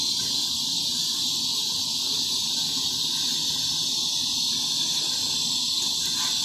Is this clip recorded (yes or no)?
yes